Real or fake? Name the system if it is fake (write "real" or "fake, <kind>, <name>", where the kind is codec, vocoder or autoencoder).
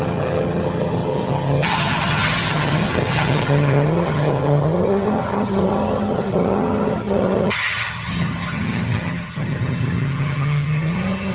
fake, vocoder, HiFi-GAN